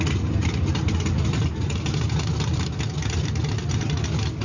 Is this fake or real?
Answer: real